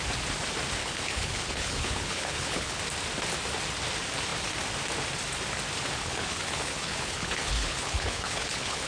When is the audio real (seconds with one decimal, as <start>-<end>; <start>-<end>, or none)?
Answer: 0.0-0.8; 2.8-6.0